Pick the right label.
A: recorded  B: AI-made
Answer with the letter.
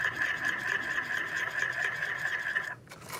A